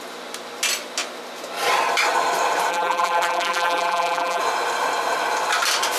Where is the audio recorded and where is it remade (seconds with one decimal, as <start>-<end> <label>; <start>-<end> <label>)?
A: 0.0-2.7 recorded; 2.7-4.4 remade; 4.4-6.0 recorded